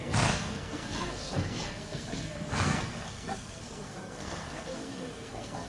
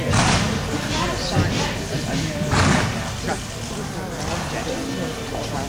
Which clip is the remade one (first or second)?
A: first